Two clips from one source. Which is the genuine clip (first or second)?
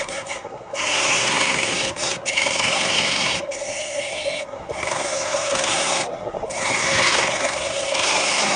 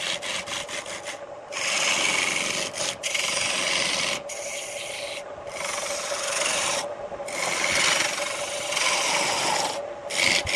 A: second